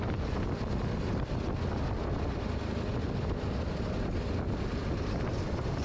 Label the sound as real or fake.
real